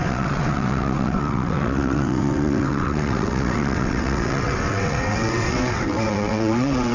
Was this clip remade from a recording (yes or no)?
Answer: yes